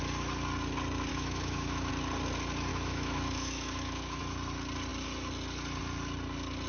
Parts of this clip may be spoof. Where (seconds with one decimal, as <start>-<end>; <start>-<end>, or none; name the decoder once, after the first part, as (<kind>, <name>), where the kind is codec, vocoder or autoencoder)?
1.1-1.9 (autoencoder, DAC-VAE); 2.7-4.2